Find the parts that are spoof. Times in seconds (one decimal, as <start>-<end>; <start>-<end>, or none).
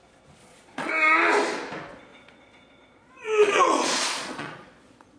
0.4-0.9; 2.1-5.2